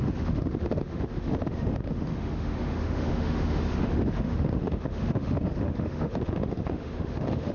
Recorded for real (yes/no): no